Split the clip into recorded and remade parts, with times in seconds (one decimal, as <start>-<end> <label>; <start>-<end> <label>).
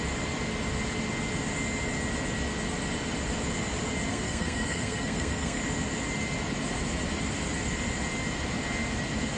0.0-4.1 recorded; 4.1-5.6 remade; 5.6-9.4 recorded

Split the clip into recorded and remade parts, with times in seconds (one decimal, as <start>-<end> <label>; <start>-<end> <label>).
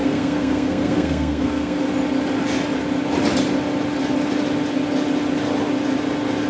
0.0-1.8 remade; 1.8-6.5 recorded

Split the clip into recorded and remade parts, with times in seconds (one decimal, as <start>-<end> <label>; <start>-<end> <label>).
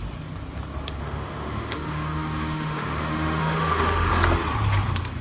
0.0-1.0 recorded; 1.0-4.1 remade; 4.1-5.2 recorded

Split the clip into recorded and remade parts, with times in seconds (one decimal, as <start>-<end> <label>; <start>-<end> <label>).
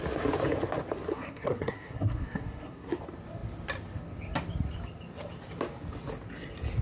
0.0-1.1 recorded; 1.1-3.0 remade; 3.0-6.8 recorded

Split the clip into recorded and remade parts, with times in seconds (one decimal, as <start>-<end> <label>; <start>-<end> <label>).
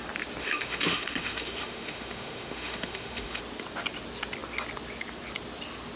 0.0-0.4 recorded; 0.4-3.4 remade; 3.4-6.0 recorded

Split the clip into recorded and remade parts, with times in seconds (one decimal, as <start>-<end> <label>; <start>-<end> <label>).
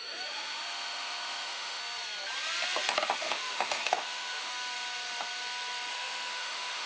0.0-1.8 remade; 1.8-3.2 recorded; 3.2-4.5 remade; 4.5-5.9 recorded; 5.9-6.9 remade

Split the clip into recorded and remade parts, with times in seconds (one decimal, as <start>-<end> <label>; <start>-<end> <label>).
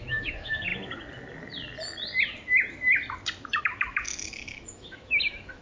0.0-0.7 remade; 0.7-3.6 recorded; 3.6-5.6 remade